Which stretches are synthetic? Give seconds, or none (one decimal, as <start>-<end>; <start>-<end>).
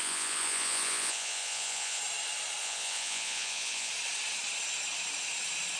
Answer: 0.0-2.0; 2.6-3.9